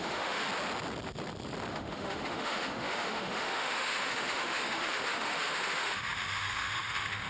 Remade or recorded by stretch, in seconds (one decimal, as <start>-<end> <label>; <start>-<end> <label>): 0.0-0.5 remade; 0.5-1.7 recorded; 1.7-7.3 remade